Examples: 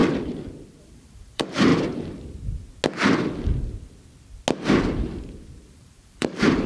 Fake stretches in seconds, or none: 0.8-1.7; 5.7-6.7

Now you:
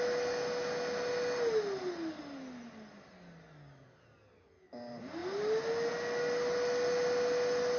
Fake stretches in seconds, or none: none

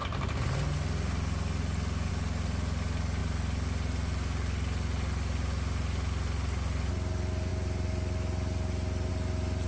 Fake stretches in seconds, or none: 7.5-9.1

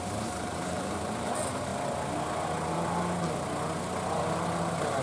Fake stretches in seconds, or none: 0.0-1.7

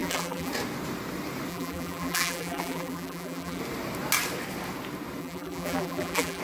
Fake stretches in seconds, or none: 0.0-0.5; 1.5-3.6; 5.2-6.4

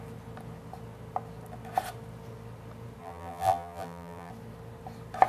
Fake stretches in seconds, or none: 3.0-4.3